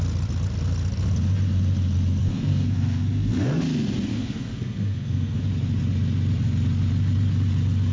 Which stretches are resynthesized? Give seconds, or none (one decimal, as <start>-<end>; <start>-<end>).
2.2-3.6; 4.1-5.4